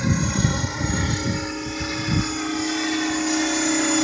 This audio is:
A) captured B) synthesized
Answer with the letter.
A